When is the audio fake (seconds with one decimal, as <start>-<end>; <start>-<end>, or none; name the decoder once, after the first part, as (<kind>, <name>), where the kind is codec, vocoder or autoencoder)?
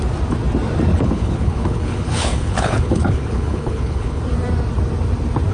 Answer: 0.9-4.2 (codec, HILCodec)